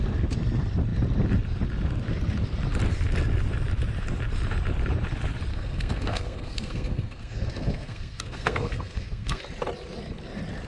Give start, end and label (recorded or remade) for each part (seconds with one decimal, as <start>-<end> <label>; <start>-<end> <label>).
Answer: 0.0-5.5 recorded; 5.5-9.4 remade; 9.4-10.7 recorded